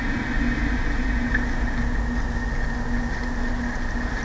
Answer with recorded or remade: recorded